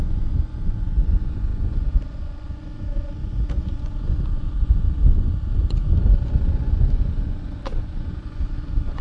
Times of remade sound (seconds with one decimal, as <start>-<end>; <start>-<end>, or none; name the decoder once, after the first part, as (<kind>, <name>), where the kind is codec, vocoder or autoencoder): 0.0-9.0 (vocoder, Vocos)